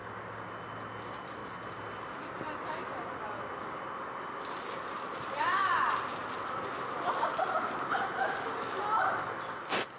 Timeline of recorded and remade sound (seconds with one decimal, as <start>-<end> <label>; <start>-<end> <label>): 0.0-0.6 recorded; 0.6-1.4 remade; 1.4-2.2 recorded; 2.2-6.2 remade; 6.2-8.2 recorded; 8.2-10.0 remade